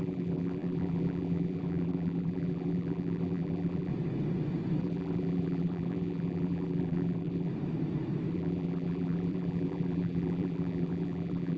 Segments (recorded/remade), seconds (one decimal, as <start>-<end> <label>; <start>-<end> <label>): 0.0-3.9 remade; 3.9-4.8 recorded; 4.8-7.5 remade; 7.5-8.3 recorded; 8.3-11.6 remade